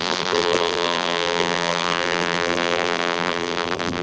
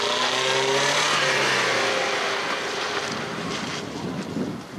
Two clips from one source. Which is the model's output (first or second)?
first